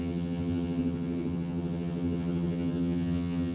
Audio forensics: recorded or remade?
remade